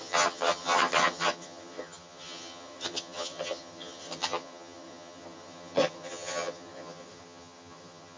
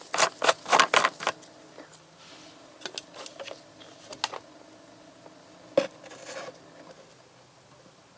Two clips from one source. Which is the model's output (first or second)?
first